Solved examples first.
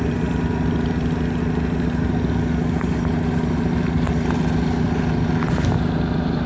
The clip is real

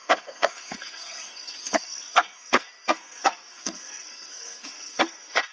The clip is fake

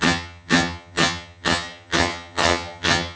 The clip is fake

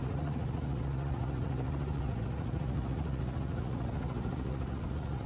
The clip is fake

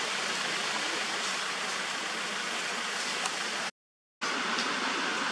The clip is real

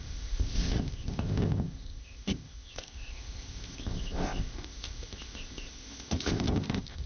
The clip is fake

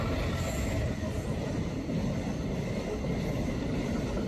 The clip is fake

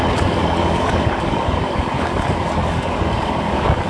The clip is fake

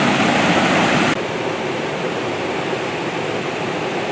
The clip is real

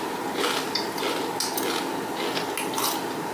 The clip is real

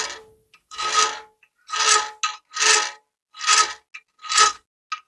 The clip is real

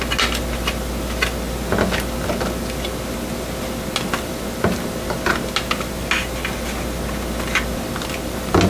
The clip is real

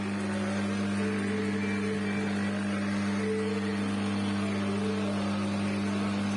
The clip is real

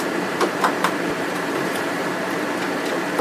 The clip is fake